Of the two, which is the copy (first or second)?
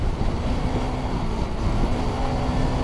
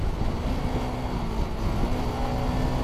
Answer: first